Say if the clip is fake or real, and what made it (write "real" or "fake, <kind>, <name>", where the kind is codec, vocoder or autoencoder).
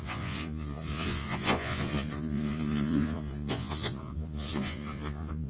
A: fake, vocoder, Vocos